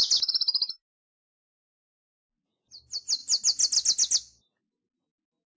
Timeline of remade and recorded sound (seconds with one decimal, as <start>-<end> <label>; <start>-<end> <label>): 0.0-5.6 recorded